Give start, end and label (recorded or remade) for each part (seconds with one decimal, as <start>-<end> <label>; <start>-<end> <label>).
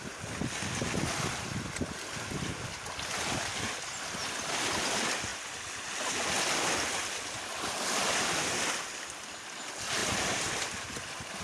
0.0-11.4 recorded